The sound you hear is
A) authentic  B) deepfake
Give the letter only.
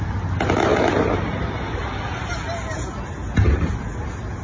A